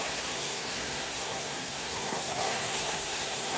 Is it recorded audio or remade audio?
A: remade